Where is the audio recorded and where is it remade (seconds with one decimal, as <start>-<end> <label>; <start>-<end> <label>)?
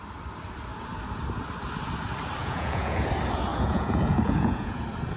0.0-2.4 recorded; 2.4-3.1 remade; 3.1-3.5 recorded; 3.5-4.8 remade; 4.8-5.2 recorded